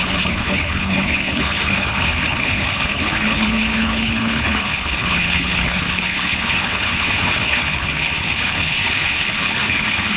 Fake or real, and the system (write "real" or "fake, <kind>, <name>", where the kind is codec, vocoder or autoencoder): fake, codec, HILCodec